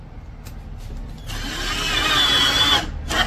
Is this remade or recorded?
recorded